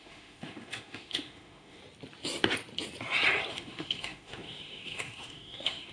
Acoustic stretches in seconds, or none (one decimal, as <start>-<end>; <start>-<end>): 1.8-3.5